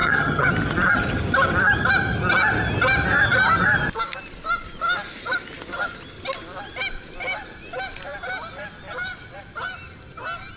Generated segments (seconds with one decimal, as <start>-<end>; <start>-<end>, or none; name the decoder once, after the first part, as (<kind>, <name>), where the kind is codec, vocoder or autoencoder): 0.0-0.5 (vocoder, HiFi-GAN)